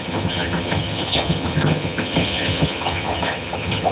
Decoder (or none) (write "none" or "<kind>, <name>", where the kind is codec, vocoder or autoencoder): vocoder, HiFi-GAN